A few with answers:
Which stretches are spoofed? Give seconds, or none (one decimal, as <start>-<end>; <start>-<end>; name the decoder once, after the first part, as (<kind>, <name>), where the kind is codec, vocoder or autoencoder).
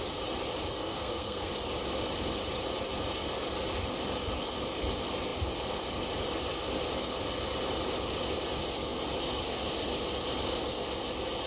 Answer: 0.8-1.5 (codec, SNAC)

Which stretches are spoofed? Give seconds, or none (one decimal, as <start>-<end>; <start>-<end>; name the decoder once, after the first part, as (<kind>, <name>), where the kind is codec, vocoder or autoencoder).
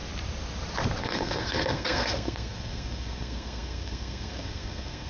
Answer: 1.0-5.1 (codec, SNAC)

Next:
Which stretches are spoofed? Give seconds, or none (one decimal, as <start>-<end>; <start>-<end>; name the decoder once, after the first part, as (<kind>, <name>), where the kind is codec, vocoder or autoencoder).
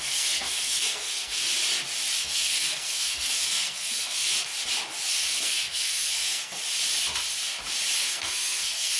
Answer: 0.0-1.4 (codec, SNAC); 2.2-4.5; 5.1-6.6; 8.0-9.0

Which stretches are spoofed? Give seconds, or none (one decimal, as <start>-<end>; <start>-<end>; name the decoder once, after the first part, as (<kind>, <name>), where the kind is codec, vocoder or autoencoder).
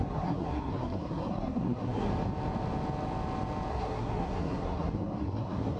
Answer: 0.0-2.1 (codec, SNAC); 3.7-5.8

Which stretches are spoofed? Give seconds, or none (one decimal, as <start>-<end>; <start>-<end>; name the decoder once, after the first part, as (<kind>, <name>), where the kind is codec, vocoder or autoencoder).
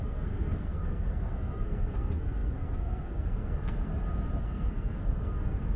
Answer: 0.0-3.9 (codec, SNAC); 4.4-5.8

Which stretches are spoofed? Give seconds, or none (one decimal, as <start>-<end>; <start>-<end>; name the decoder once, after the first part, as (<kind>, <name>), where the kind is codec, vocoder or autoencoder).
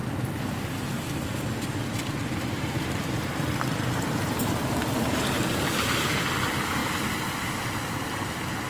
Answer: none